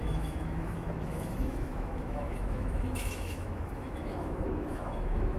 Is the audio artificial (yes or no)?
yes